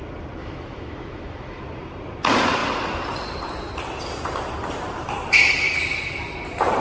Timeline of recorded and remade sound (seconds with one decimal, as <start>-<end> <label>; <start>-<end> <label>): 0.0-0.4 recorded; 0.4-1.6 remade; 1.6-6.8 recorded